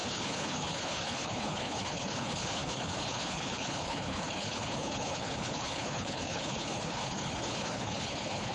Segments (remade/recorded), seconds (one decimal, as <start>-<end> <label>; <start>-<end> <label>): 0.0-8.5 remade